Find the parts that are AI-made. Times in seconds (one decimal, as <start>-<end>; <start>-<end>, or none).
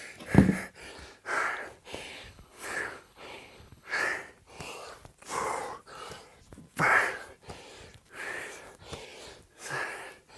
2.1-4.0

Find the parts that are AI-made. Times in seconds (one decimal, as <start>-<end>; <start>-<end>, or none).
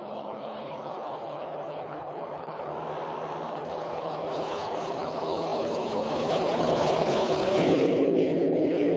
0.0-2.7; 3.5-9.0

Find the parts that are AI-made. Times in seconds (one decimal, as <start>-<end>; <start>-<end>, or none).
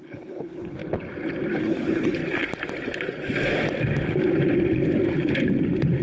0.0-0.8; 1.6-2.2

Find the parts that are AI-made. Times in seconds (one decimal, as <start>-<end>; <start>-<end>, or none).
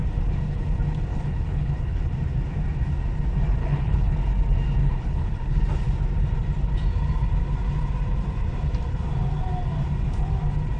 1.1-2.0; 3.6-4.1; 4.8-5.6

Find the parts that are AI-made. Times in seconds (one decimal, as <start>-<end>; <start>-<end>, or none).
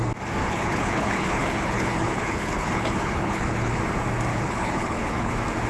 0.4-3.8; 4.3-5.3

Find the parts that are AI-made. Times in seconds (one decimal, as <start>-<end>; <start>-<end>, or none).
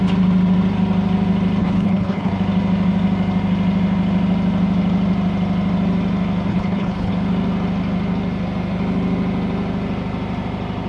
1.6-2.3; 6.5-7.1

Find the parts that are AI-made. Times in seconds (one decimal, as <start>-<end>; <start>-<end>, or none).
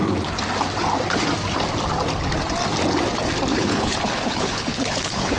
3.5-5.4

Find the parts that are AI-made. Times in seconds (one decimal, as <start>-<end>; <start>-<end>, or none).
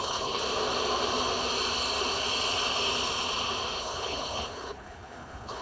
0.0-0.4; 3.8-5.6